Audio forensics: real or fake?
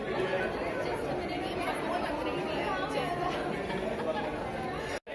real